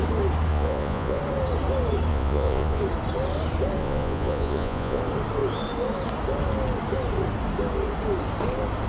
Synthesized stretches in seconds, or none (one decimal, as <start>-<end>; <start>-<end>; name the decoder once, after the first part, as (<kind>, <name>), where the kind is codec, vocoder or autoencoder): 0.5-1.2 (vocoder, Vocos); 2.1-2.8; 3.8-5.0